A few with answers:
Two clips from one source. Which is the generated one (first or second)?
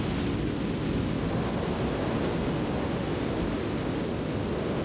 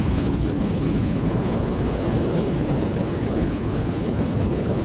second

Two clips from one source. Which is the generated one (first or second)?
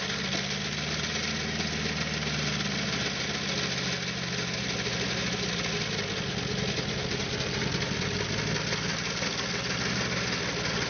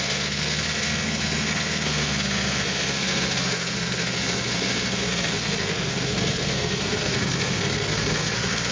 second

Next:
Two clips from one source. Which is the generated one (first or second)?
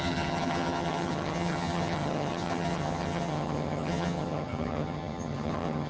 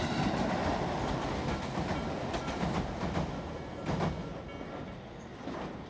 first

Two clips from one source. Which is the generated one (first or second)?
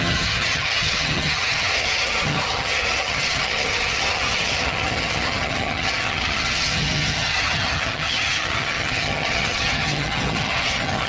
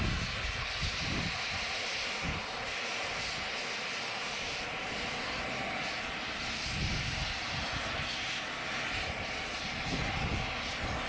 first